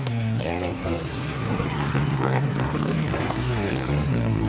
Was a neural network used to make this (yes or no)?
yes